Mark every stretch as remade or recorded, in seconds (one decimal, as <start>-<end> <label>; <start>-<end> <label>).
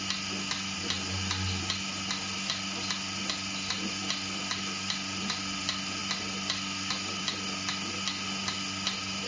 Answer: 0.0-9.3 recorded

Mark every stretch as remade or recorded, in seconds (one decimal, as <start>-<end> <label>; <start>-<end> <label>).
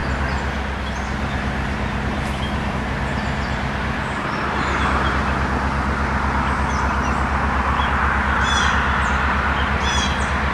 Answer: 0.0-0.9 recorded; 0.9-10.5 remade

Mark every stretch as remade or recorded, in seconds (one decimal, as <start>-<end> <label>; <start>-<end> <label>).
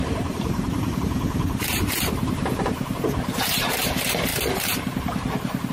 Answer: 0.0-1.0 remade; 1.0-2.2 recorded; 2.2-3.0 remade; 3.0-4.3 recorded; 4.3-5.7 remade